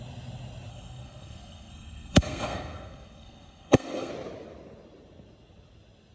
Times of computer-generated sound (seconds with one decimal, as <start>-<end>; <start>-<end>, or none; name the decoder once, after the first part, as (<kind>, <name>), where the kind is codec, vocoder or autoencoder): 0.7-4.1 (codec, SNAC)